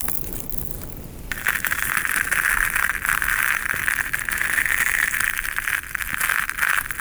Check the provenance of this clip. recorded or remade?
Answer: recorded